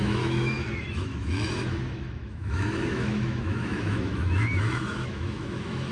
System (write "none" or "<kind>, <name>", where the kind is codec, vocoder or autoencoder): autoencoder, DAC-VAE